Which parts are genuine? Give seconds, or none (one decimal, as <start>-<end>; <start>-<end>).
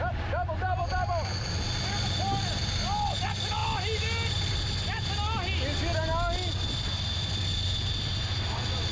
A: 0.0-8.9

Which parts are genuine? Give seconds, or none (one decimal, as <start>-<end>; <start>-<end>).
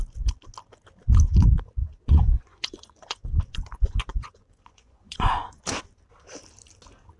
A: 0.0-1.8; 5.6-7.2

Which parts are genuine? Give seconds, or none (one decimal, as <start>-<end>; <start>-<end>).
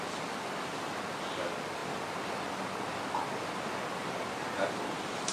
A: 0.0-5.3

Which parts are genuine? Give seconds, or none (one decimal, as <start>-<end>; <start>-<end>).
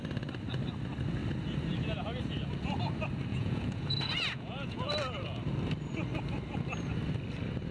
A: 0.0-3.3; 4.9-7.7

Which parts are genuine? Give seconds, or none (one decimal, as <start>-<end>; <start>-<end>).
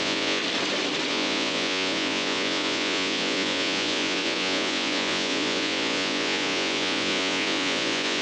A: 0.4-1.1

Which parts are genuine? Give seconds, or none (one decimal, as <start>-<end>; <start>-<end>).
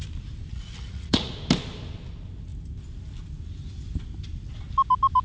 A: 0.0-0.5; 1.3-5.2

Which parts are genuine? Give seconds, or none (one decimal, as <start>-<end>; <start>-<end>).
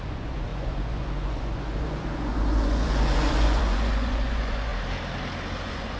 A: 4.7-5.6